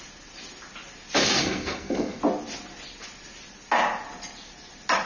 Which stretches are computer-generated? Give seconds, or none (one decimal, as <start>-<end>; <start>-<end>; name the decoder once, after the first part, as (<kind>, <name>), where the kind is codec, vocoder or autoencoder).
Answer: 1.2-2.2 (codec, SNAC)